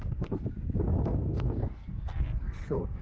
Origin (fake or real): fake